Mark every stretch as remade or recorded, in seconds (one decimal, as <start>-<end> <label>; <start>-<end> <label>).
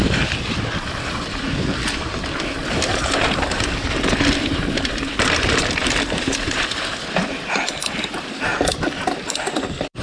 0.0-8.5 remade; 8.5-9.0 recorded; 9.0-10.0 remade